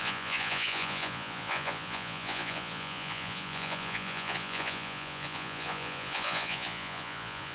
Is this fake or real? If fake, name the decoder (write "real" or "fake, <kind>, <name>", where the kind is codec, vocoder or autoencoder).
fake, vocoder, Vocos